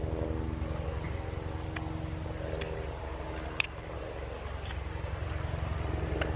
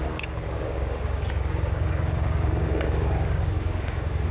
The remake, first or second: second